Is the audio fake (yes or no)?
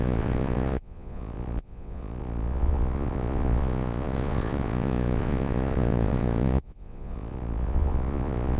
yes